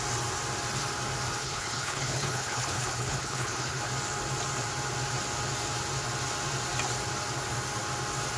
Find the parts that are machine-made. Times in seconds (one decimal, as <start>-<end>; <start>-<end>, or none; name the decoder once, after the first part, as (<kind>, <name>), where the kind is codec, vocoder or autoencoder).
1.4-3.8 (codec, HILCodec)